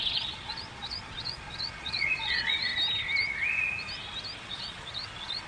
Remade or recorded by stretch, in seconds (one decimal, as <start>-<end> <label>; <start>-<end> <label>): 0.0-2.7 remade; 2.7-4.4 recorded; 4.4-5.5 remade